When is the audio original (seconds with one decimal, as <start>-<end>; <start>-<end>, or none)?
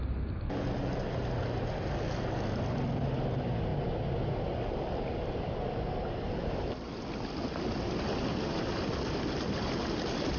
0.0-10.4